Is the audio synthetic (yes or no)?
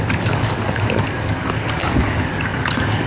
yes